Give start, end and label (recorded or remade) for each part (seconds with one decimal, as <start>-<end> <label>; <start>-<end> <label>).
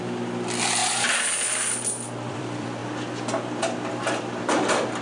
0.0-0.8 remade; 0.8-2.3 recorded; 2.3-2.8 remade; 2.8-4.4 recorded; 4.4-5.0 remade